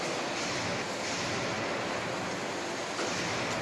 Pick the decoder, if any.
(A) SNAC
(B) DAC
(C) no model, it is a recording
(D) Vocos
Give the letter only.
C